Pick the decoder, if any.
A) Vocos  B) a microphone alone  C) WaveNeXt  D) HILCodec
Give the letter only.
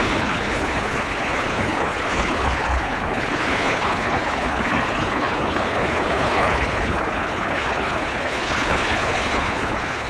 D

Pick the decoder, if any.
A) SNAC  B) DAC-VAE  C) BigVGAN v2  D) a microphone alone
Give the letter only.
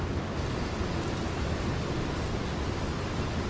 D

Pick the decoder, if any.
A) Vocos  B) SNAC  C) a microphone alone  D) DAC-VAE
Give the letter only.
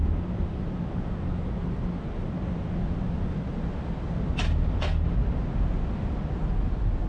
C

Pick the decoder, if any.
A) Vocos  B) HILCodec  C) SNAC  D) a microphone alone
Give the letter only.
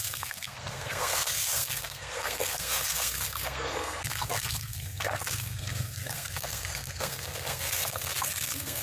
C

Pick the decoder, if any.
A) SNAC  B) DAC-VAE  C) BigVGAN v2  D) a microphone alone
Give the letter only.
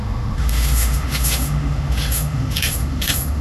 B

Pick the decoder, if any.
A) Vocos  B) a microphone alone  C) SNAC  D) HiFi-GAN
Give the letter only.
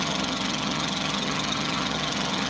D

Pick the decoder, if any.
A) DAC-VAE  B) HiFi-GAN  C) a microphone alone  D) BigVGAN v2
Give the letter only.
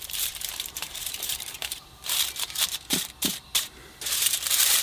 D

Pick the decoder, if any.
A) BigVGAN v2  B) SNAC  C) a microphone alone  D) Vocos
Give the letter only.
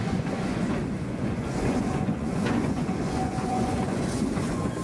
D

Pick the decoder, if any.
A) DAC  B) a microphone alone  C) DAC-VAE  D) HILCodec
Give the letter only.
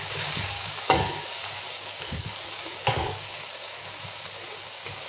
A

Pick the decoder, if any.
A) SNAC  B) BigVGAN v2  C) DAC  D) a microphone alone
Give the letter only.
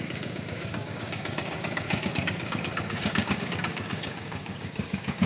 C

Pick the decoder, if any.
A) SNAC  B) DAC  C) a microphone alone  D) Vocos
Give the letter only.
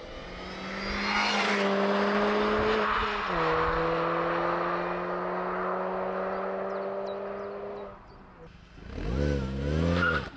C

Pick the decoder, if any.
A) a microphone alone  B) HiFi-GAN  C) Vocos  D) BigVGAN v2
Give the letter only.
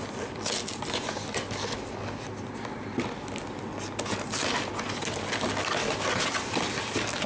A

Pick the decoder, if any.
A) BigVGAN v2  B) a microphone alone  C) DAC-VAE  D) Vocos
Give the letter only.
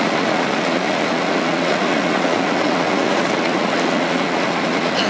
D